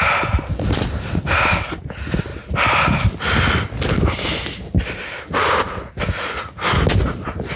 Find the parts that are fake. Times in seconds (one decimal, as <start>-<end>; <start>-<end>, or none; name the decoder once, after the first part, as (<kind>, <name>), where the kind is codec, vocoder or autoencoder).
none